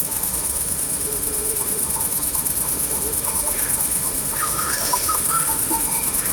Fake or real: fake